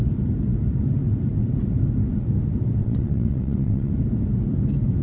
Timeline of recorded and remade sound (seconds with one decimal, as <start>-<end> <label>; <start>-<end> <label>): 0.0-2.8 recorded; 2.8-3.9 remade; 3.9-5.0 recorded